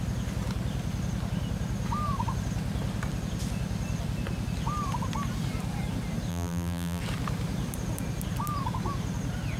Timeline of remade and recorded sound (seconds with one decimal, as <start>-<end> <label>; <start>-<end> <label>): 0.0-6.3 recorded; 6.3-7.0 remade; 7.0-9.6 recorded

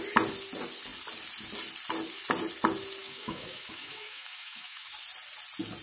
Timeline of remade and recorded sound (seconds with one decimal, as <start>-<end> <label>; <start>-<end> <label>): 0.0-3.0 recorded; 3.0-4.9 remade; 4.9-5.8 recorded

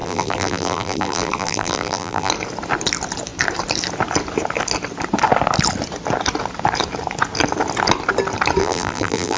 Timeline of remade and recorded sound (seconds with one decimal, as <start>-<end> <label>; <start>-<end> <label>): 0.0-2.3 remade; 2.3-8.6 recorded; 8.6-9.4 remade

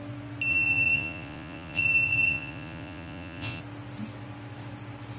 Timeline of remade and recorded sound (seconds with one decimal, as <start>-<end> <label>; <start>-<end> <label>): 0.0-0.5 recorded; 0.5-3.6 remade; 3.6-5.2 recorded